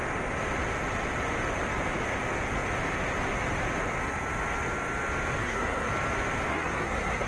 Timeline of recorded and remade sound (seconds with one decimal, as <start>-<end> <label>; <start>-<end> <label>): 0.0-5.4 recorded; 5.4-5.9 remade; 5.9-6.5 recorded; 6.5-7.3 remade